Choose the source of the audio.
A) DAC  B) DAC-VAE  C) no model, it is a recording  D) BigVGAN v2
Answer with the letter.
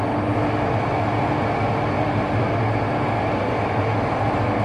C